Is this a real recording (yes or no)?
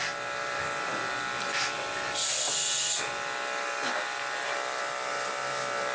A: yes